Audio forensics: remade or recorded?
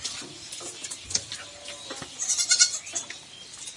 recorded